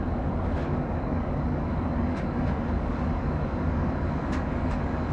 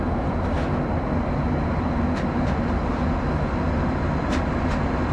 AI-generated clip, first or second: first